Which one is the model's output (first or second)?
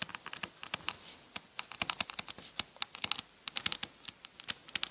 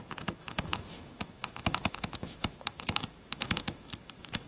second